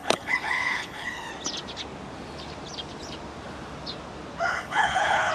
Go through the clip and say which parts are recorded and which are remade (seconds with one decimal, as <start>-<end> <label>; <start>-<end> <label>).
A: 0.0-1.3 remade; 1.3-4.5 recorded; 4.5-5.3 remade